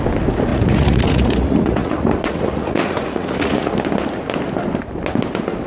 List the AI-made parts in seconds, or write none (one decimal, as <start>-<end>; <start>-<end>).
0.5-3.7